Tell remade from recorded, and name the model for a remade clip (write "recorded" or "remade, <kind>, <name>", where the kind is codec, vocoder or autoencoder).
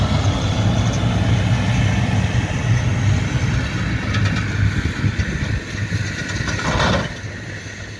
recorded